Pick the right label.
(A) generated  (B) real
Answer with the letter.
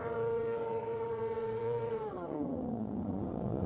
A